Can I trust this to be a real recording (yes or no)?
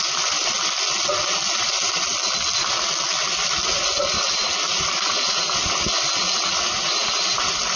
yes